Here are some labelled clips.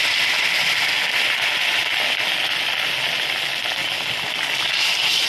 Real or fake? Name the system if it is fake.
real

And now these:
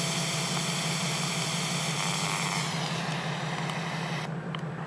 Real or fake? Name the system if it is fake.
fake, vocoder, BigVGAN v2